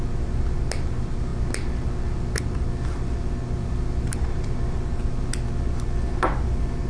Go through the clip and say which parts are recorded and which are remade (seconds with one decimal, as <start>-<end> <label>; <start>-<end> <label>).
0.0-6.9 recorded